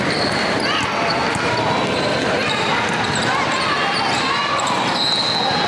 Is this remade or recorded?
recorded